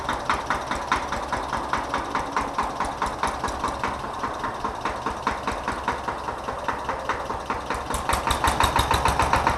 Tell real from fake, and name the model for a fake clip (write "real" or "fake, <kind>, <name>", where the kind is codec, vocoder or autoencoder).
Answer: real